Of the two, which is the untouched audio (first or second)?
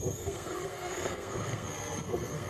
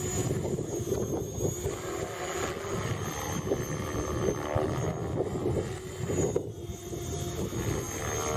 second